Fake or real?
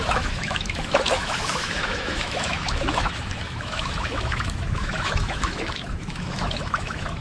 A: fake